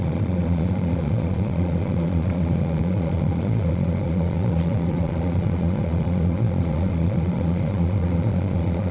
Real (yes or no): no